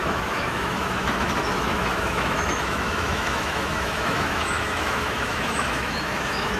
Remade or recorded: remade